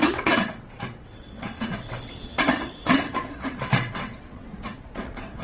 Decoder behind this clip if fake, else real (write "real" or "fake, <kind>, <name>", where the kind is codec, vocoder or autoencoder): fake, vocoder, WaveNeXt